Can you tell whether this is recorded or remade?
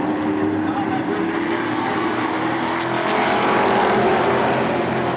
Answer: recorded